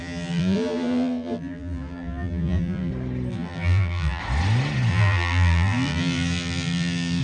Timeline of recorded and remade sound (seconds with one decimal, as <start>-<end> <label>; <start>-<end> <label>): 0.0-2.9 remade; 2.9-3.3 recorded; 3.3-4.2 remade; 4.2-4.9 recorded; 4.9-7.2 remade